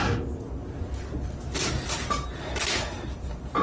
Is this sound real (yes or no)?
yes